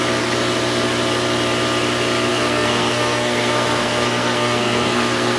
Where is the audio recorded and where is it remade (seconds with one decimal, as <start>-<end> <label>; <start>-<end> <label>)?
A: 0.0-2.3 recorded; 2.3-5.4 remade